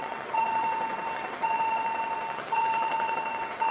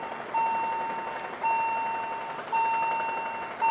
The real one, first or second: second